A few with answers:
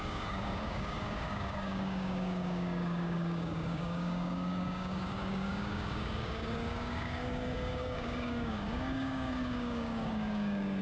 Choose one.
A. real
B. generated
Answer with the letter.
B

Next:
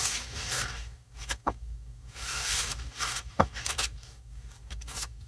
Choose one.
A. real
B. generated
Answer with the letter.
B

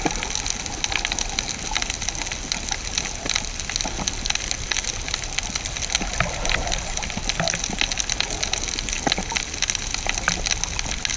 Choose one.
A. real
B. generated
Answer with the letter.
A